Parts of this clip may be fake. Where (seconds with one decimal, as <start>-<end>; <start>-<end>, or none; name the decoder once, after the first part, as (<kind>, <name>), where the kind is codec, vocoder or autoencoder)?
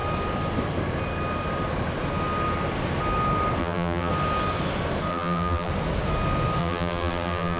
3.6-4.1 (vocoder, BigVGAN v2); 5.1-5.7; 6.6-7.6